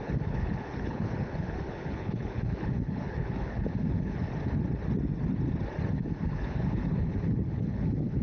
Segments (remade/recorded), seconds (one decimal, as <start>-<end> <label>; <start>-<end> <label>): 0.0-4.3 remade; 4.3-5.9 recorded; 5.9-8.2 remade